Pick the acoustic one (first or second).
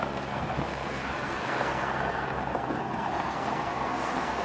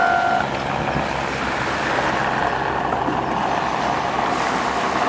second